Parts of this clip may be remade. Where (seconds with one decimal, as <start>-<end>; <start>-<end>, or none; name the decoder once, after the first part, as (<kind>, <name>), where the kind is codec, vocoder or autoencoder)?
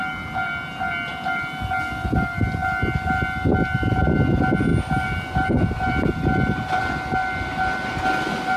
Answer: 4.7-6.8 (vocoder, BigVGAN v2)